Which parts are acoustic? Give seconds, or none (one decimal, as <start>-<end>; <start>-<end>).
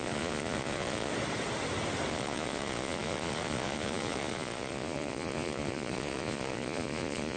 1.1-2.1